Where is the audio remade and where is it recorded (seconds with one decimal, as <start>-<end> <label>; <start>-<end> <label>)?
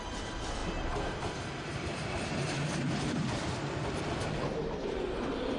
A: 0.0-0.6 recorded; 0.6-4.0 remade; 4.0-5.6 recorded